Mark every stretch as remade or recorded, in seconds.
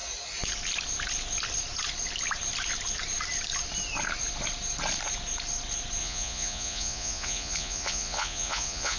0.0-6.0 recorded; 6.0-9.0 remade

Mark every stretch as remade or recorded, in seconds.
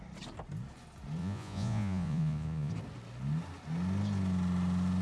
0.0-1.2 recorded; 1.2-2.7 remade; 2.7-5.0 recorded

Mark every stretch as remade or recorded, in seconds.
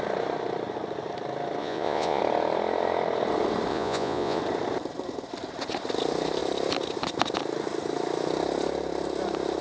0.0-1.6 recorded; 1.6-2.2 remade; 2.2-3.7 recorded; 3.7-4.4 remade; 4.4-9.6 recorded